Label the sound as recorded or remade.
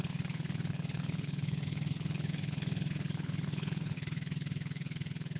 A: remade